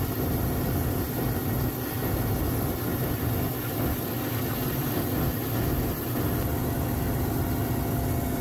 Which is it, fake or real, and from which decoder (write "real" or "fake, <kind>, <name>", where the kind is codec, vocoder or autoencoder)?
real